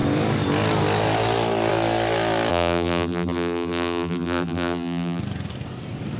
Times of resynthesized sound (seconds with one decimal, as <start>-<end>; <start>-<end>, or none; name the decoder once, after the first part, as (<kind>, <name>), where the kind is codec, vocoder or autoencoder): 2.5-5.2 (vocoder, BigVGAN v2)